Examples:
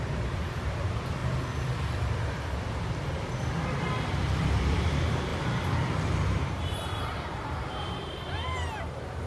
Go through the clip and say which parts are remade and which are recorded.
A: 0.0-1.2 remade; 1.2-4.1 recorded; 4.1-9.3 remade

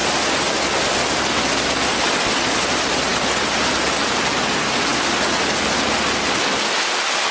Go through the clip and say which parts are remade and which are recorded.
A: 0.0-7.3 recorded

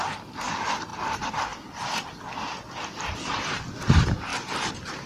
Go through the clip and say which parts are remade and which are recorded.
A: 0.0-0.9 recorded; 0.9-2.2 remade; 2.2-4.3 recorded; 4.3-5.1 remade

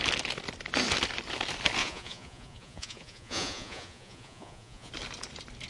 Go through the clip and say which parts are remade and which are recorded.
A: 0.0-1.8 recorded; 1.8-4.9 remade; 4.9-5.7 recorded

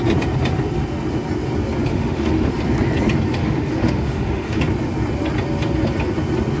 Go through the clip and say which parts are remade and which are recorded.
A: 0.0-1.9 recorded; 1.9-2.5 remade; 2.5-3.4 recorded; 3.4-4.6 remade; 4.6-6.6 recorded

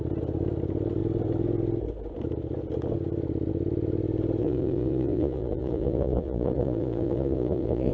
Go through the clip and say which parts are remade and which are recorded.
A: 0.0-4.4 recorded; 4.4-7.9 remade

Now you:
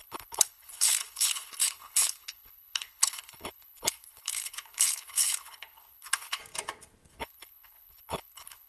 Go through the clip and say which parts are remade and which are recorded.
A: 0.0-6.4 remade; 6.4-7.2 recorded; 7.2-8.7 remade